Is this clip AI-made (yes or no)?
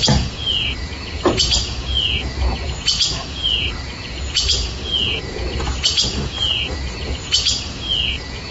yes